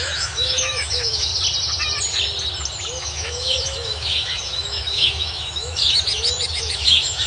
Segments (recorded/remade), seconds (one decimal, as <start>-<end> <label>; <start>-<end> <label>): 0.0-1.3 remade; 1.3-3.0 recorded; 3.0-7.3 remade